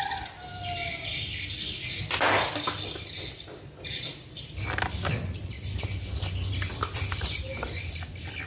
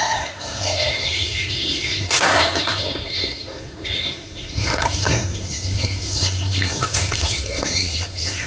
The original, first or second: first